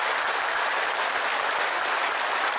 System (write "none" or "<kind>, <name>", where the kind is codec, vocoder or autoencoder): vocoder, BigVGAN v2